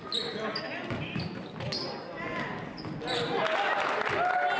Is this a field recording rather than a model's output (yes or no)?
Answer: yes